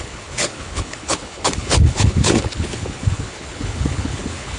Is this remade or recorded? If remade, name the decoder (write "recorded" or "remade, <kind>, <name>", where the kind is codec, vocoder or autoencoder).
remade, codec, HILCodec